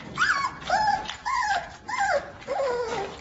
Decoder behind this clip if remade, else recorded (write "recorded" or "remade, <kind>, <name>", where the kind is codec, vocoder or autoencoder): recorded